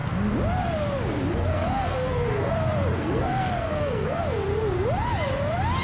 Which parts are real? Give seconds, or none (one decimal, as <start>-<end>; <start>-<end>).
0.0-1.3; 2.5-2.9; 4.2-5.8